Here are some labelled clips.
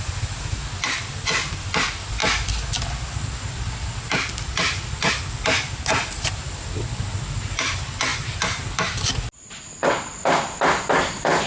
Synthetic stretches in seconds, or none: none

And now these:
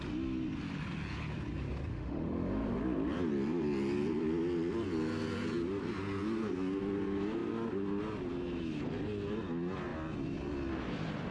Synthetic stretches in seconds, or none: 1.9-2.8

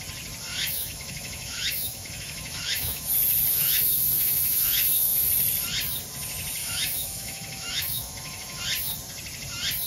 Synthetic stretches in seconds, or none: 0.5-3.1; 3.5-5.3; 6.6-8.6

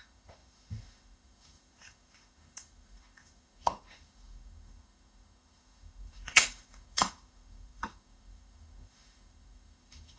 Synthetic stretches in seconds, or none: 0.0-10.2